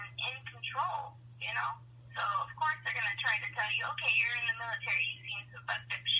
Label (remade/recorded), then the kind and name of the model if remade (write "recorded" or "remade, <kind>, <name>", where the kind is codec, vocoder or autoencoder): recorded